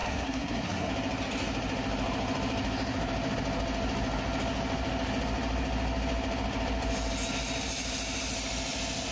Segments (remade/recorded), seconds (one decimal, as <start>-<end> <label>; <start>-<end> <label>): 0.0-0.9 remade; 0.9-9.1 recorded

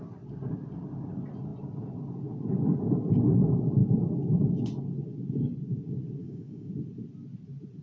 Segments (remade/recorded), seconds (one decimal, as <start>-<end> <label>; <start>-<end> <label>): 0.0-6.2 recorded; 6.2-6.7 remade; 6.7-7.8 recorded